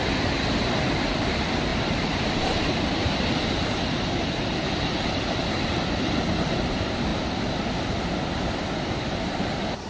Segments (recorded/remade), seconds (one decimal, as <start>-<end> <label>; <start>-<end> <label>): 0.0-1.7 recorded; 1.7-6.4 remade; 6.4-7.1 recorded; 7.1-9.9 remade